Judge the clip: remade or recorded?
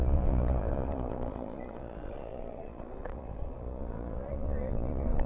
remade